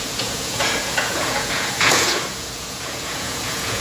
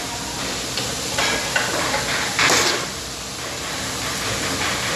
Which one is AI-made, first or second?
first